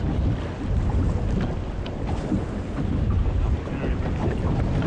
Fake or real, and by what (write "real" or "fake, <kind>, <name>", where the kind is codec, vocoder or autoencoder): real